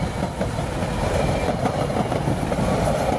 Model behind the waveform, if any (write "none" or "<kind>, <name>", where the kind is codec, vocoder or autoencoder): none